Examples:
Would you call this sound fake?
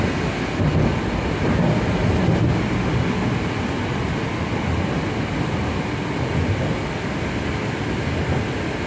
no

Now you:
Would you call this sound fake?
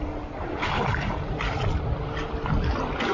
no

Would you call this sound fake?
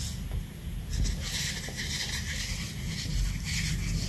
no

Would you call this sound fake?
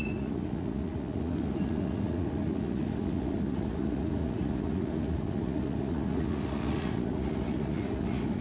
yes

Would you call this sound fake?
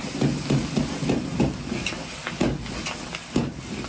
no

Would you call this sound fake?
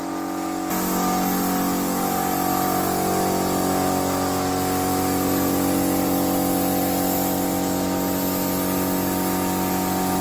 no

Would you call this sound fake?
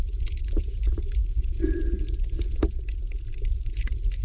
yes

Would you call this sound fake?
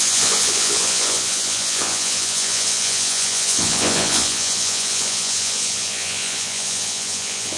yes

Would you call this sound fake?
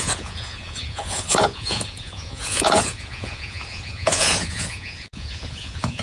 yes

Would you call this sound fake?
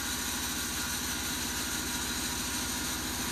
no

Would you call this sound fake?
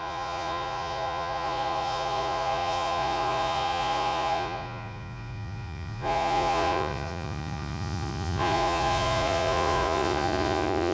yes